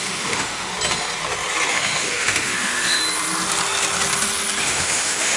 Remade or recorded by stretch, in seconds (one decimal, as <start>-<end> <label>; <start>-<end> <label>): 0.0-0.7 remade; 0.7-1.7 recorded; 1.7-3.0 remade; 3.0-4.6 recorded; 4.6-5.4 remade